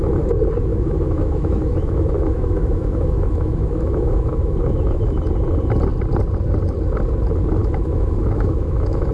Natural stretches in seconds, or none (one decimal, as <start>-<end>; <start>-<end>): 0.0-0.7; 5.2-7.6